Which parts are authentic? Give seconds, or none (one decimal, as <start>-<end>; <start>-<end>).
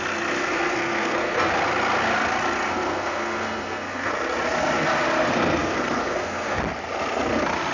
0.0-0.4; 1.5-2.7; 4.1-5.2; 6.6-7.7